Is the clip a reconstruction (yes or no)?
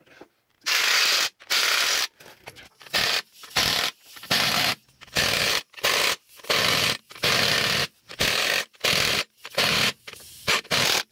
no